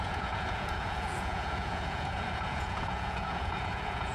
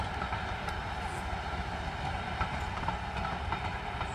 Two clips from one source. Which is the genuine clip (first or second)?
second